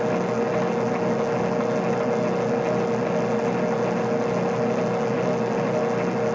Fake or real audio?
real